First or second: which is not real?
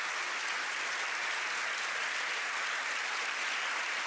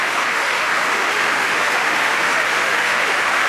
second